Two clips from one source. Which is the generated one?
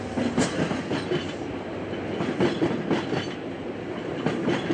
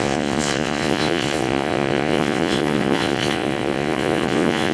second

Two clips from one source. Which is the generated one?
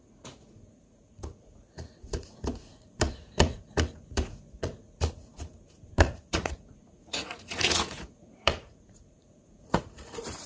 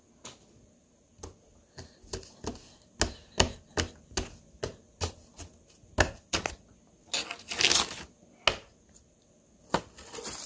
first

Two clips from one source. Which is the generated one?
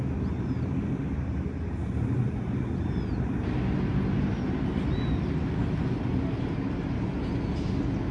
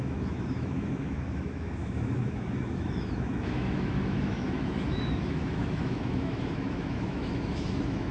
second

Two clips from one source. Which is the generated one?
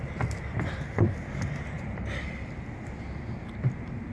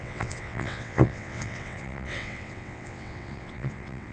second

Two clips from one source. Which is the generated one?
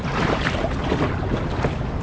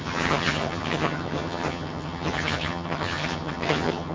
second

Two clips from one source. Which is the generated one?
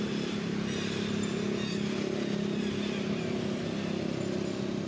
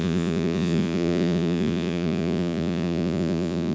second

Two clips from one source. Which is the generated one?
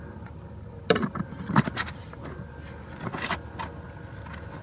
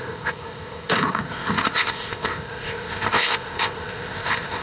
second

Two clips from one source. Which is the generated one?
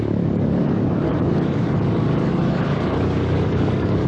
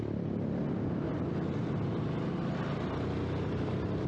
first